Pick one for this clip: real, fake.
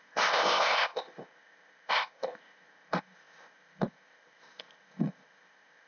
fake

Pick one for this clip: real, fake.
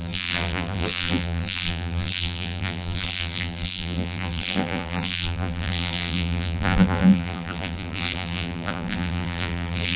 fake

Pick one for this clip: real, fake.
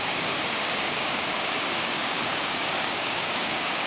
fake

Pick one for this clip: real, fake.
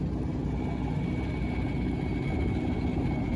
real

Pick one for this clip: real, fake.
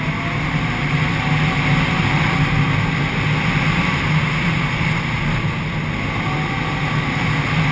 real